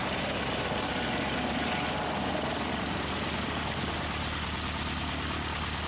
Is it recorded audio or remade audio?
recorded